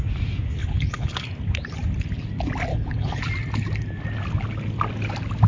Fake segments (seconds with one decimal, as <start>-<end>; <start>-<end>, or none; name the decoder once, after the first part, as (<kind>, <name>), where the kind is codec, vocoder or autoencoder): 0.6-1.2 (codec, HILCodec); 2.7-3.2